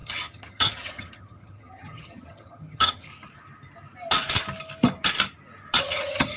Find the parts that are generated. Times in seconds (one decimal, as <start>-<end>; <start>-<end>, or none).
0.0-3.1; 5.8-6.4